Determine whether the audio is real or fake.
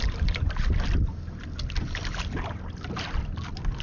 real